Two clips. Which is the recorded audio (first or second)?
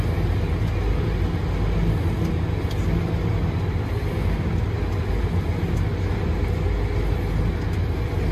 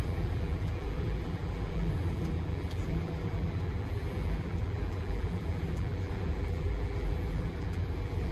first